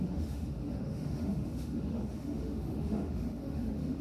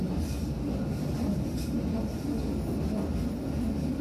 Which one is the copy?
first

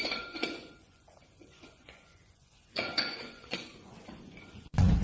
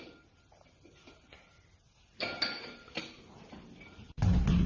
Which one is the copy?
first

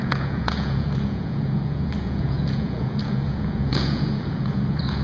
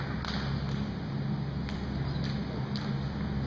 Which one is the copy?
first